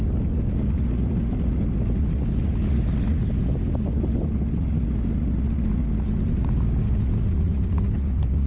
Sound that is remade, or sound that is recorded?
recorded